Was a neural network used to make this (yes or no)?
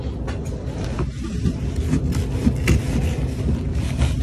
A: no